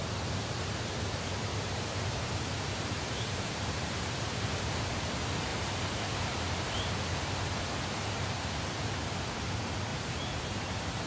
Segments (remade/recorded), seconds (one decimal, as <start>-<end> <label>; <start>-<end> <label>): 0.0-1.5 recorded; 1.5-4.7 remade; 4.7-5.5 recorded; 5.5-8.3 remade; 8.3-9.9 recorded; 9.9-11.1 remade